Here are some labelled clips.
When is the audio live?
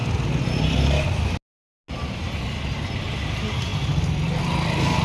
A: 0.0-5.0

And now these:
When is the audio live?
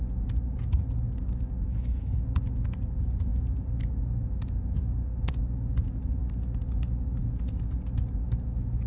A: 0.0-1.7; 2.2-8.9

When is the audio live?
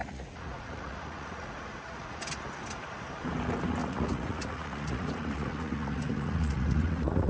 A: 2.2-3.8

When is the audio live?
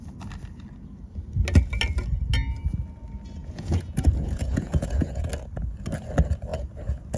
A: 0.0-3.4; 5.3-7.2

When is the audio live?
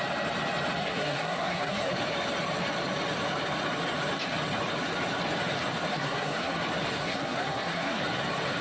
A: 0.0-0.8; 1.9-5.9; 6.6-7.0; 8.0-8.6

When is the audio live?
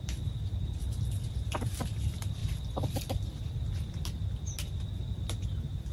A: 2.4-5.1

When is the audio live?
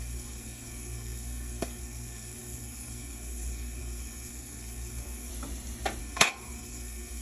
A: 5.3-6.0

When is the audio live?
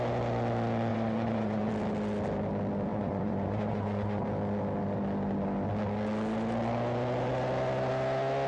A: 0.0-0.9; 1.7-2.9; 4.2-8.5